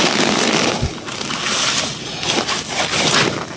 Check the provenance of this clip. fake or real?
real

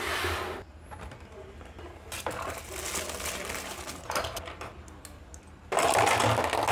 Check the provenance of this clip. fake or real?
real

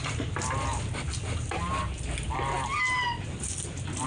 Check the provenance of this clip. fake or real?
real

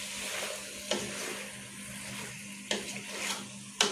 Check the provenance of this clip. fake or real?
real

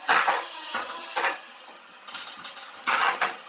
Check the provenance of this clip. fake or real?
fake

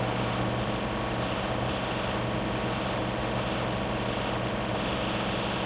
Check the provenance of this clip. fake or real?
real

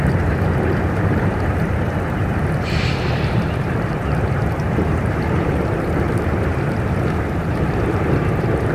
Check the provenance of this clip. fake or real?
fake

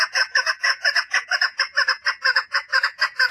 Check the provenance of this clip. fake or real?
fake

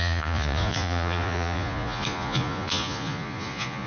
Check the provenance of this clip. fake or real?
fake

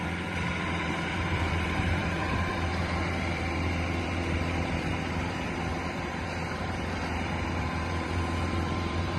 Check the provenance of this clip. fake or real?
fake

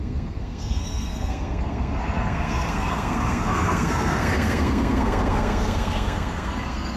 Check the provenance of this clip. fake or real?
fake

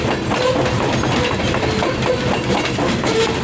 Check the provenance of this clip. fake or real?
real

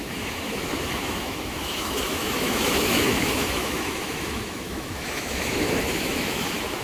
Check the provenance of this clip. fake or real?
fake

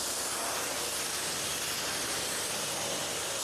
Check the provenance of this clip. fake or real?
real